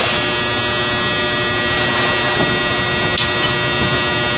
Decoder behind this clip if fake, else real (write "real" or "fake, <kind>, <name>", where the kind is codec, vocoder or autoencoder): real